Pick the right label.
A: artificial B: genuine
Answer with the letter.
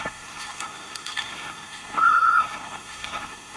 A